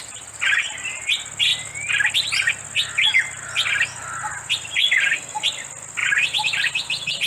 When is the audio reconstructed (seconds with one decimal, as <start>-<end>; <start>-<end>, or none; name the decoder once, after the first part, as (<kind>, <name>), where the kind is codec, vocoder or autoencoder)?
6.0-6.6 (vocoder, BigVGAN v2)